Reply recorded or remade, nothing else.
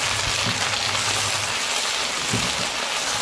recorded